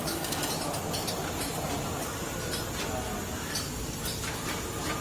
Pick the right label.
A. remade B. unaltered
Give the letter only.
B